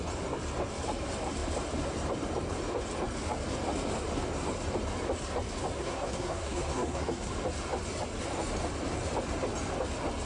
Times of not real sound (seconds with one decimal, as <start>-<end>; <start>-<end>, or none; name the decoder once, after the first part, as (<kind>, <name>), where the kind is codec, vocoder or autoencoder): 5.8-7.3 (codec, SNAC)